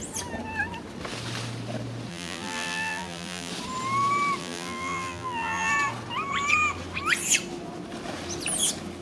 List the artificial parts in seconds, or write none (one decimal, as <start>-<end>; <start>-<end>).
2.1-3.5; 4.4-5.7